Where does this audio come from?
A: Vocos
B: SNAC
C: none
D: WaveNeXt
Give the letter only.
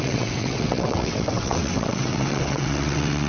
D